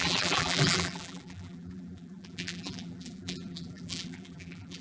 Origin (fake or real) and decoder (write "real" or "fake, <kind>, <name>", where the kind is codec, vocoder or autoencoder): fake, vocoder, BigVGAN v2